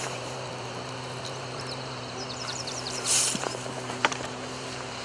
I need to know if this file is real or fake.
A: fake